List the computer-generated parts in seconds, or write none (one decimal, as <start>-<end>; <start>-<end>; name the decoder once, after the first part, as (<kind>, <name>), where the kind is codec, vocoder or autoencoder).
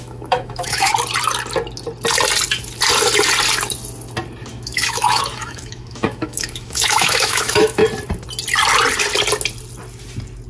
0.0-0.9 (autoencoder, DAC-VAE); 4.5-7.8